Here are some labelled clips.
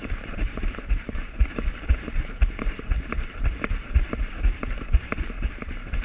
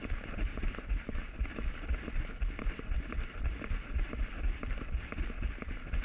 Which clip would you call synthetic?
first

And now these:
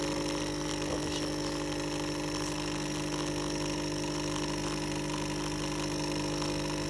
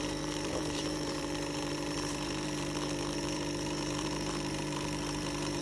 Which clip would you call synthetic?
second